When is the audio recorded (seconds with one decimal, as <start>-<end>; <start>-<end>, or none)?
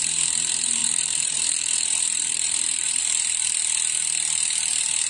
0.0-0.8; 3.0-5.1